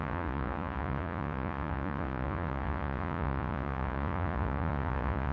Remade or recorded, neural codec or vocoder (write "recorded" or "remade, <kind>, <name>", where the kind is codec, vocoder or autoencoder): remade, vocoder, Vocos